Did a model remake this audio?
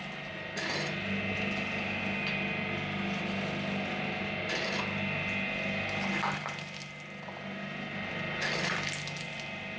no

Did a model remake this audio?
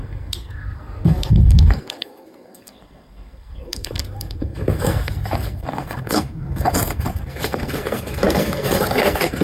yes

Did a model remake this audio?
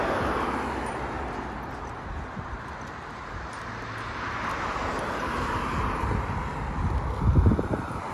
no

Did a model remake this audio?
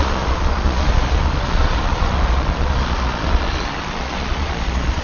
yes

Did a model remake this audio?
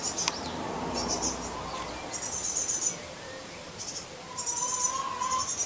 no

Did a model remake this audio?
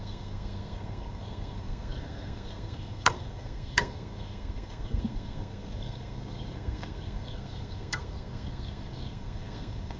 yes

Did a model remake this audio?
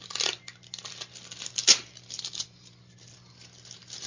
no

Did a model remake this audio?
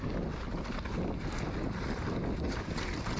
no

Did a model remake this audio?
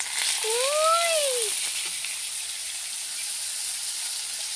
no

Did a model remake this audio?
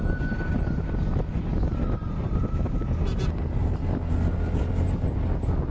no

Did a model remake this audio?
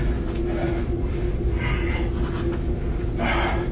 no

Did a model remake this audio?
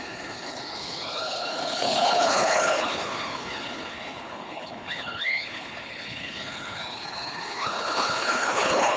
yes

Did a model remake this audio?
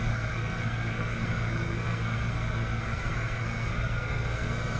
yes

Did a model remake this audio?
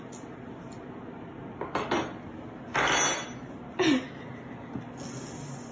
no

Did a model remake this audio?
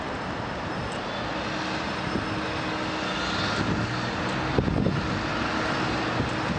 no